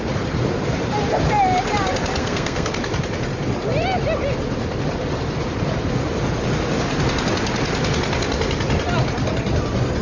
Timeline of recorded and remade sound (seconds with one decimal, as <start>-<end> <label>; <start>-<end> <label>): 0.0-2.2 recorded; 2.2-2.7 remade; 2.7-10.0 recorded